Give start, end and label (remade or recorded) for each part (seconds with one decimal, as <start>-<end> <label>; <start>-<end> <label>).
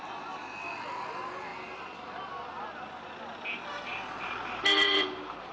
0.0-3.9 recorded; 3.9-5.5 remade